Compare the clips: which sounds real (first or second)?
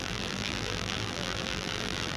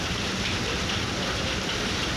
second